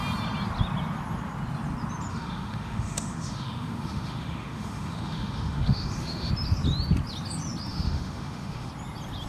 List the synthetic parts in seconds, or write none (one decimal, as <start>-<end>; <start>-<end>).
2.1-6.3; 7.7-8.7